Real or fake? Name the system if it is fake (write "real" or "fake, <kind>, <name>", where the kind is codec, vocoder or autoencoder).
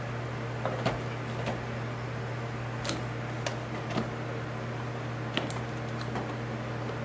real